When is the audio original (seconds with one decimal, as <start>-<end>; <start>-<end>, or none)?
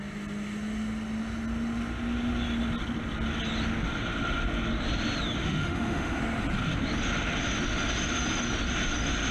0.0-5.4; 6.2-9.3